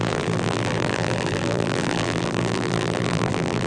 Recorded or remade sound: remade